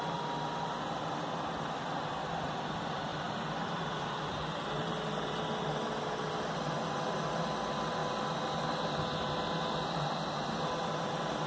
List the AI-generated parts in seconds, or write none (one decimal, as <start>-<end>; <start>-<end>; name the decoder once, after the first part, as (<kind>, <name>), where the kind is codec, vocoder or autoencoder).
none